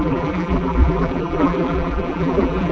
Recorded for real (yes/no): no